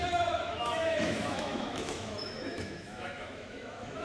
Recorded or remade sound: remade